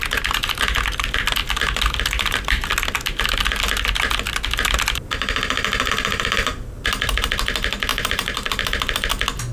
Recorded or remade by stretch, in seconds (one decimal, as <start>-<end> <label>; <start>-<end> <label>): 0.0-7.9 recorded; 7.9-8.6 remade; 8.6-9.5 recorded